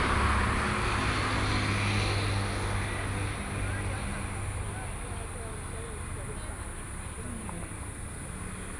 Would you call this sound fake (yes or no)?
no